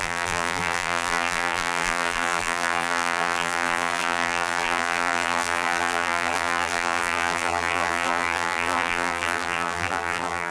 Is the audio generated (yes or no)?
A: yes